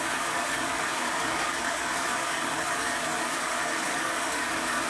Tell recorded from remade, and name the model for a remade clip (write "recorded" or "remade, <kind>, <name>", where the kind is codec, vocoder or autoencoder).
remade, codec, DAC